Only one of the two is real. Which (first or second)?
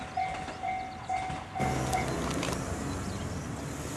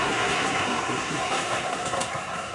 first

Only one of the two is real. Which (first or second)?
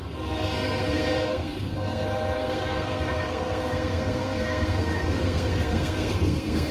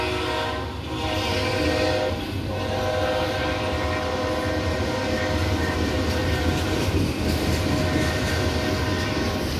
second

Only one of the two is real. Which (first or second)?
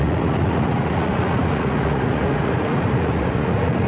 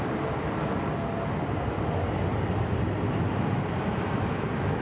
second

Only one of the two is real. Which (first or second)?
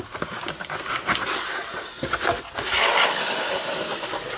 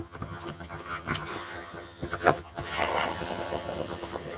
first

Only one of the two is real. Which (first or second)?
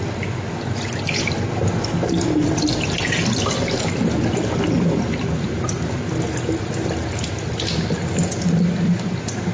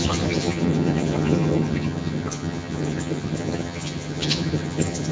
first